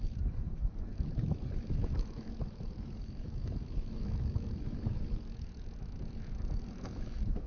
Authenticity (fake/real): fake